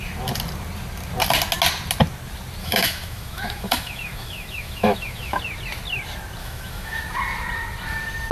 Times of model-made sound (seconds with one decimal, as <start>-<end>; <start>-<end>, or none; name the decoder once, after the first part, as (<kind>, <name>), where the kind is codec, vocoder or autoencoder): 2.6-5.4 (autoencoder, DAC-VAE); 6.4-7.0